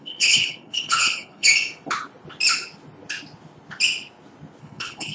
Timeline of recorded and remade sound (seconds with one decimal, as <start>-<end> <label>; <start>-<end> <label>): 0.0-1.5 remade; 1.5-4.6 recorded; 4.6-5.1 remade